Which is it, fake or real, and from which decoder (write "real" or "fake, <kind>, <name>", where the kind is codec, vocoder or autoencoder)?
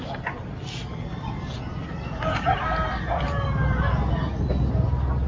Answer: real